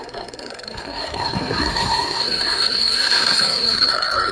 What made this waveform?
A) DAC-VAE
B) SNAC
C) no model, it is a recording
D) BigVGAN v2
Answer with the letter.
B